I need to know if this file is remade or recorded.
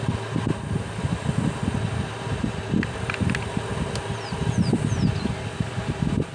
recorded